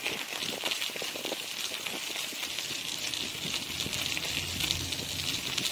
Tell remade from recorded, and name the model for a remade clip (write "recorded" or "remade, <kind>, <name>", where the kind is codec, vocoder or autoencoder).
recorded